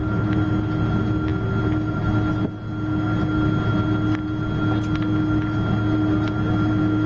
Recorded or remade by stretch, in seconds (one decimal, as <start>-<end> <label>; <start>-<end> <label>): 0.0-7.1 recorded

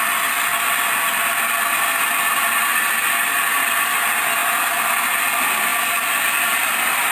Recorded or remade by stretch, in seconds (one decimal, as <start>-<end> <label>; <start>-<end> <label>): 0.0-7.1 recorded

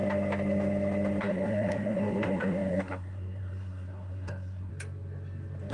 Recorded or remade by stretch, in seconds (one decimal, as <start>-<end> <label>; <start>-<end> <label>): 0.0-1.2 recorded; 1.2-4.7 remade; 4.7-5.7 recorded

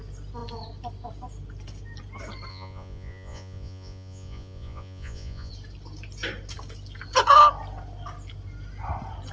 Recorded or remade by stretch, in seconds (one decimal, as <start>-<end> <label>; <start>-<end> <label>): 0.0-2.5 recorded; 2.5-5.5 remade; 5.5-9.3 recorded